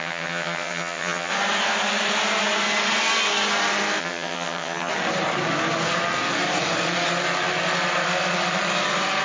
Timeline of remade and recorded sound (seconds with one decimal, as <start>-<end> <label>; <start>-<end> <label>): 0.0-1.3 remade; 1.3-4.0 recorded; 4.0-4.9 remade; 4.9-9.2 recorded